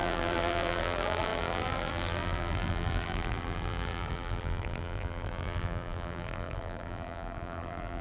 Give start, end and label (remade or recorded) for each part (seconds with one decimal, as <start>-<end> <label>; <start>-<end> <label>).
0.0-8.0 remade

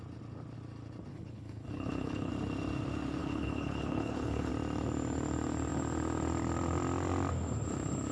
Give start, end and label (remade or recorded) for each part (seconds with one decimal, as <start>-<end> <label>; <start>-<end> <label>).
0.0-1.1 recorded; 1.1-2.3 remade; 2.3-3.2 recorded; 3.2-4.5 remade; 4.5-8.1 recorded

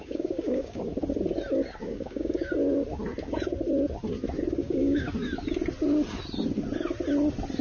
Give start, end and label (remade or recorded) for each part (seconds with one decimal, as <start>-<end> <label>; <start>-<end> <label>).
0.0-0.8 remade; 0.8-1.8 recorded; 1.8-2.5 remade; 2.5-4.6 recorded; 4.6-5.1 remade; 5.1-7.6 recorded